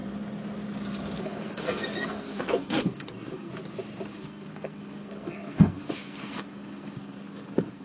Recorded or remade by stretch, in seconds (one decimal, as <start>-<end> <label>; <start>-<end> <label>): 0.0-1.2 recorded; 1.2-3.5 remade; 3.5-4.1 recorded; 4.1-7.8 remade